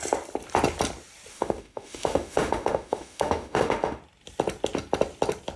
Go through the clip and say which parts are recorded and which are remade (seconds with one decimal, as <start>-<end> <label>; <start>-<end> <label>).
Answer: 0.0-1.3 recorded; 1.3-4.0 remade; 4.0-5.6 recorded